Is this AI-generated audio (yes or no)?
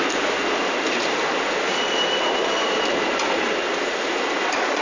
yes